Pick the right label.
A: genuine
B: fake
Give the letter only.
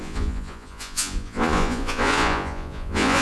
B